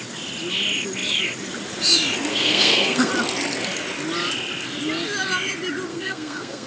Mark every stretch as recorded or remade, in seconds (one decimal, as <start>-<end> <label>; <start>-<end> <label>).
0.0-2.3 recorded; 2.3-3.1 remade; 3.1-5.9 recorded; 5.9-6.7 remade